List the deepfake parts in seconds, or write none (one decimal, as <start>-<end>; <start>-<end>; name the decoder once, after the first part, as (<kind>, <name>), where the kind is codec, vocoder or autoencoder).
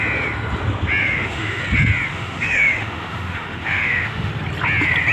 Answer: 1.0-1.6 (autoencoder, DAC-VAE); 2.1-4.3